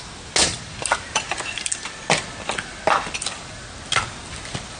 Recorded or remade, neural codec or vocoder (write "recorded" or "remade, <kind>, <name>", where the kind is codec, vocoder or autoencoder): recorded